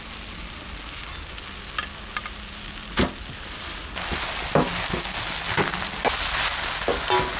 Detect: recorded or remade recorded